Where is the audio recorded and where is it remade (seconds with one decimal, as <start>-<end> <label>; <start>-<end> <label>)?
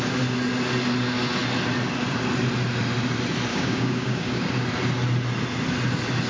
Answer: 0.0-3.5 recorded; 3.5-4.5 remade; 4.5-6.3 recorded